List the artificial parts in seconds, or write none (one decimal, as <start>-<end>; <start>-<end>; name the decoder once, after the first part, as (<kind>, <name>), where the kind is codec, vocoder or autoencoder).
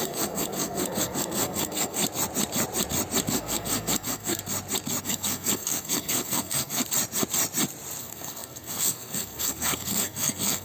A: 0.0-2.0 (codec, SNAC); 3.3-4.4; 5.0-6.8; 8.0-10.6